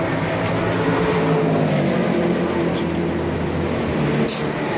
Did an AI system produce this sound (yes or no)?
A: no